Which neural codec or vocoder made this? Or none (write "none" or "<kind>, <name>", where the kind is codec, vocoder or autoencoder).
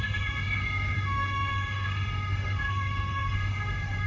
autoencoder, DAC-VAE